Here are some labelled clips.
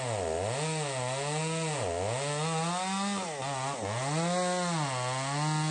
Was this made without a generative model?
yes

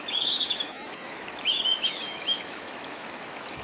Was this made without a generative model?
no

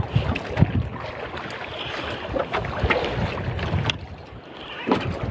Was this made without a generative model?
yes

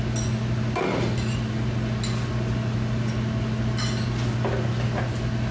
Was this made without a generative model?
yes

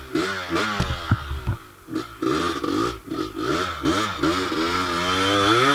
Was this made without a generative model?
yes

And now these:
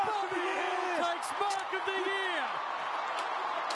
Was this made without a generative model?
yes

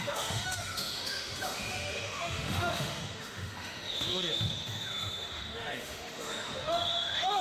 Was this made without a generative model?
no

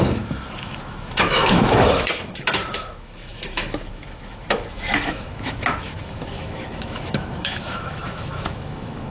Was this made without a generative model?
no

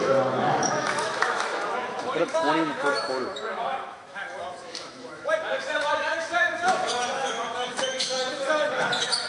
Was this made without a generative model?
no